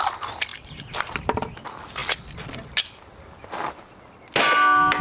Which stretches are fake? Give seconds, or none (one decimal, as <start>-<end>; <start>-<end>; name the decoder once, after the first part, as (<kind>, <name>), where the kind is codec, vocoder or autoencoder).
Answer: 0.5-1.6 (vocoder, BigVGAN v2); 2.0-3.0